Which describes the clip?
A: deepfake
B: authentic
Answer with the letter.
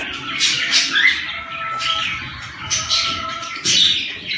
B